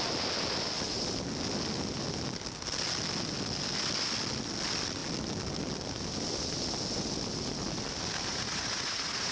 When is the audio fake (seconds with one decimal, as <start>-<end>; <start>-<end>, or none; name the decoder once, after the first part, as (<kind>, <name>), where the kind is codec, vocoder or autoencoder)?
8.3-9.3 (vocoder, Vocos)